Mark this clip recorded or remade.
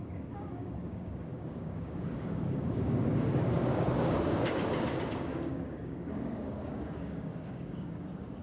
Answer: remade